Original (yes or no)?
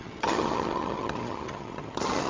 no